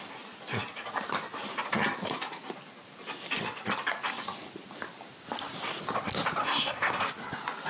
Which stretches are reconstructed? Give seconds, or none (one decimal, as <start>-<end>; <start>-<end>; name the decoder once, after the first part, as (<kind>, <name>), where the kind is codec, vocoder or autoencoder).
6.4-7.0 (codec, SNAC)